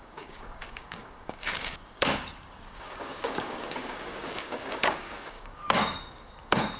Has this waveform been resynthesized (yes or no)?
yes